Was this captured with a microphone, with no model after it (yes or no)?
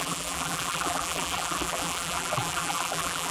no